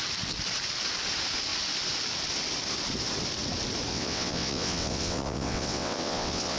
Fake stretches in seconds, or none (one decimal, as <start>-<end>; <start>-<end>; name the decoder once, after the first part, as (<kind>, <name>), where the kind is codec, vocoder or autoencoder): 3.9-6.6 (vocoder, WaveNeXt)